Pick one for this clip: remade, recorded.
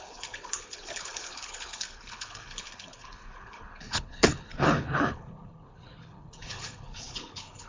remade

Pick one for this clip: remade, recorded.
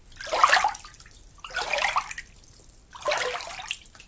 recorded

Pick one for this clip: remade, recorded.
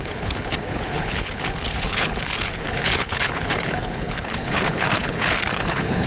remade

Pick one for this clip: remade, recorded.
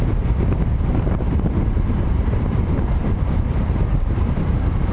recorded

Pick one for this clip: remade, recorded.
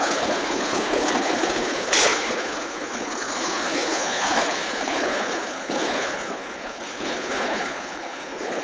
remade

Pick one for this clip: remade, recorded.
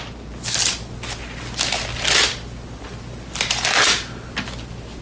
recorded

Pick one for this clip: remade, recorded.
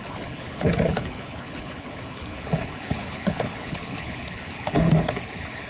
remade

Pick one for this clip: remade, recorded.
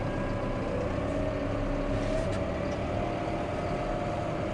recorded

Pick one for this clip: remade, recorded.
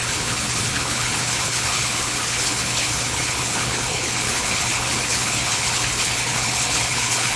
remade